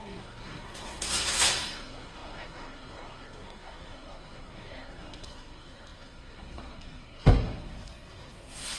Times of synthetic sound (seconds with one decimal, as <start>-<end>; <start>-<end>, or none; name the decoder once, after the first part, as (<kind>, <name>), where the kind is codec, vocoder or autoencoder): 0.0-8.8 (codec, SNAC)